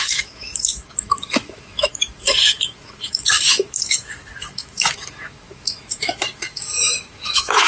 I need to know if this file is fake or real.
fake